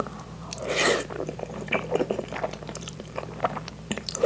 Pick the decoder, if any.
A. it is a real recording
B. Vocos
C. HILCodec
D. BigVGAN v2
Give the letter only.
D